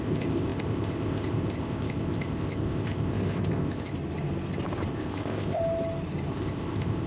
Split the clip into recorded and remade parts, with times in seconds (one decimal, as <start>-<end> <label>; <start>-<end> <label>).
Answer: 0.0-3.9 remade; 3.9-4.9 recorded; 4.9-5.6 remade; 5.6-6.3 recorded; 6.3-7.1 remade

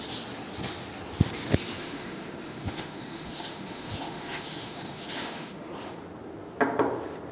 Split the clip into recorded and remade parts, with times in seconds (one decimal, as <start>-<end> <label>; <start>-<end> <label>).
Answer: 0.0-1.8 recorded; 1.8-5.7 remade; 5.7-7.3 recorded

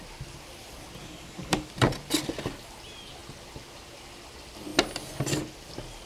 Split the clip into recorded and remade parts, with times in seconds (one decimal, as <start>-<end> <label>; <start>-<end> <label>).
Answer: 0.0-1.0 recorded; 1.0-1.7 remade; 1.7-6.1 recorded

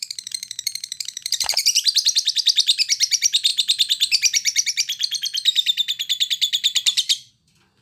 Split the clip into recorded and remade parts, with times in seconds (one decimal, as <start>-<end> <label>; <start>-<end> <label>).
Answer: 0.0-1.8 remade; 1.8-7.8 recorded